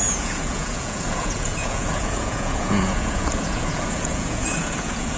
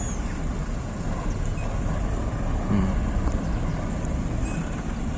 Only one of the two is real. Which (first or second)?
second